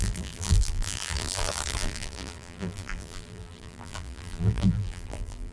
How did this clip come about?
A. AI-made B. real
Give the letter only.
A